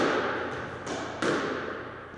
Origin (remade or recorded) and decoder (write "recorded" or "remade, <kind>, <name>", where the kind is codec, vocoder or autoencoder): recorded